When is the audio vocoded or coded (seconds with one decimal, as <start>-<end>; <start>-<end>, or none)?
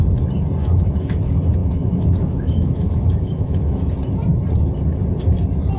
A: 0.6-1.2; 1.6-3.9